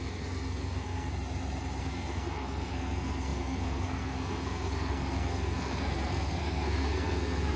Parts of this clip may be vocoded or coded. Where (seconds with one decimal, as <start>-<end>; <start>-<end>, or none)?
0.0-1.1; 1.8-7.6